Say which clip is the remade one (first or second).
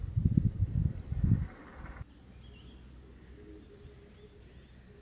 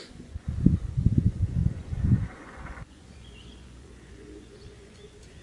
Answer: second